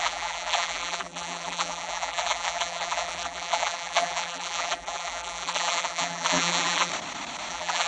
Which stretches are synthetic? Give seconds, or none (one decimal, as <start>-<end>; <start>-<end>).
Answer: 0.0-6.9; 7.5-7.9